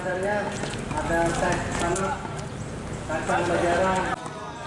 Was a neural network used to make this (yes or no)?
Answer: no